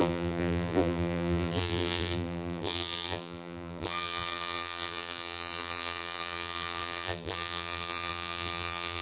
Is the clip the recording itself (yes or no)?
no